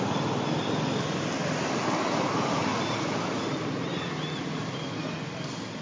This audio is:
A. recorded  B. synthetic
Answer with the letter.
A